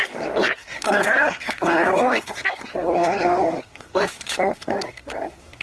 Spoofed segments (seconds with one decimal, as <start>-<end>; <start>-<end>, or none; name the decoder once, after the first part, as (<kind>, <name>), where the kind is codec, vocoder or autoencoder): 0.0-5.6 (codec, SNAC)